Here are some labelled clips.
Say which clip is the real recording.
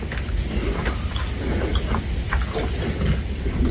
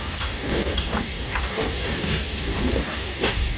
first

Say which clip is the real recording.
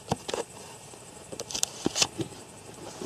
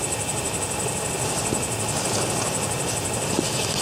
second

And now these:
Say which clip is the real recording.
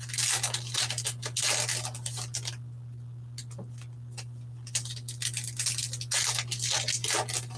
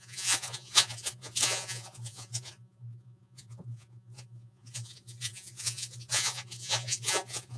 first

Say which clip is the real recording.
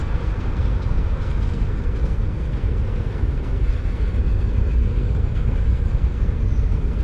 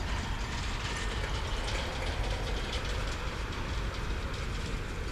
second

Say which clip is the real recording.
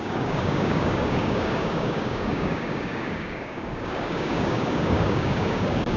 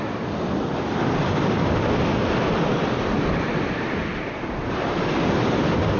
second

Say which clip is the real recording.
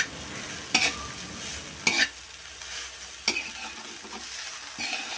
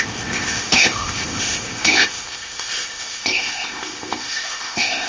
first